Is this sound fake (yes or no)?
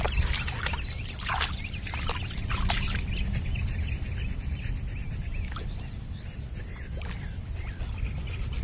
no